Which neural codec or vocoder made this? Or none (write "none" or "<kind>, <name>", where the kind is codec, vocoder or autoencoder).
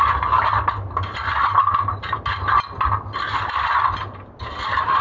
none